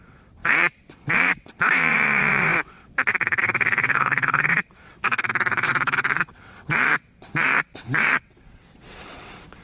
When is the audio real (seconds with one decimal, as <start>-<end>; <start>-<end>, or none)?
none